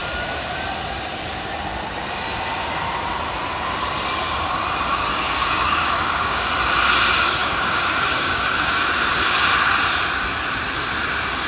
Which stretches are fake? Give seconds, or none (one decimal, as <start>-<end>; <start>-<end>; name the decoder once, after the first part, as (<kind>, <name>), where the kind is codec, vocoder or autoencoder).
4.9-6.5 (codec, DAC); 7.4-8.8